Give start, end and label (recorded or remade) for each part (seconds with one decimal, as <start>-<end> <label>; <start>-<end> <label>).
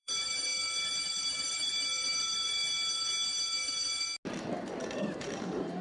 0.0-0.5 remade; 0.5-1.3 recorded; 1.3-2.6 remade; 2.6-4.9 recorded; 4.9-5.8 remade